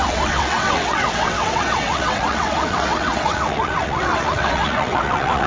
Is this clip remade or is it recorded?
remade